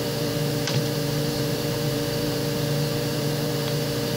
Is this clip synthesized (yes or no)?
yes